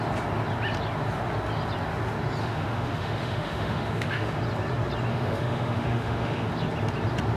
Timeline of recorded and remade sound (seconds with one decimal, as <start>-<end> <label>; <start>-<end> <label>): 0.0-2.4 recorded; 2.4-4.4 remade; 4.4-5.1 recorded; 5.1-6.5 remade; 6.5-7.4 recorded